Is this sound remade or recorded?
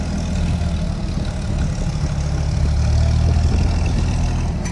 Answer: recorded